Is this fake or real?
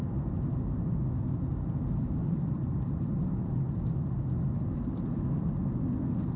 real